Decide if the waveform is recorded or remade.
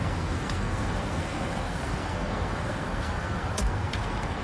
remade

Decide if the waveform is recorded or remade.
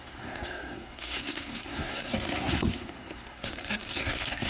remade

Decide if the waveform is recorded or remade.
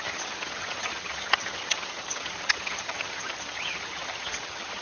remade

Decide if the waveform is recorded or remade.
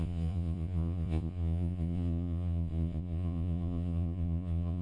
remade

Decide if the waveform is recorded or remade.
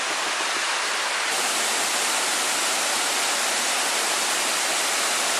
recorded